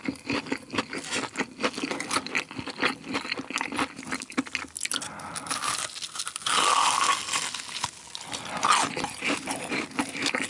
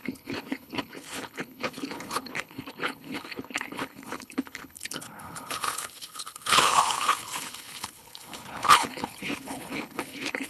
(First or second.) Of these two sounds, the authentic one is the first